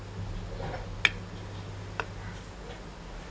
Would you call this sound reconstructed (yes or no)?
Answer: no